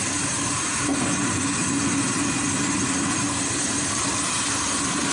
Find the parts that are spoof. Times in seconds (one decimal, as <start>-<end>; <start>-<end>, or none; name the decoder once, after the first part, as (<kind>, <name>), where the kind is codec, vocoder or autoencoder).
0.0-0.9 (vocoder, BigVGAN v2); 2.8-5.1